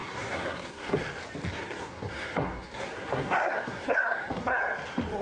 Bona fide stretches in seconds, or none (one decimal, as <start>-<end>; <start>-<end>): 1.0-1.5; 4.6-5.2